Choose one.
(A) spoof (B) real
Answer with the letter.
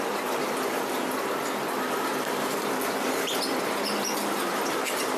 B